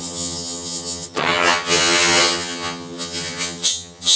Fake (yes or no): yes